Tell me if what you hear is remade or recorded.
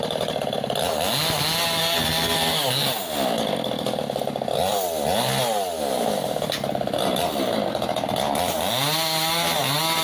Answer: recorded